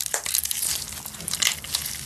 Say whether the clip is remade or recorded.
recorded